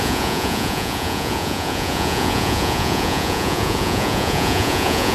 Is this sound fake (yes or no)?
yes